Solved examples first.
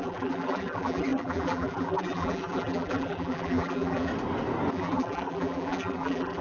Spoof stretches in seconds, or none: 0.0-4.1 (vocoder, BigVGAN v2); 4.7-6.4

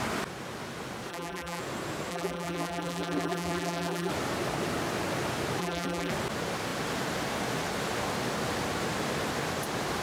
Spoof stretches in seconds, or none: 1.1-1.6 (vocoder, BigVGAN v2); 2.1-4.1; 5.6-6.1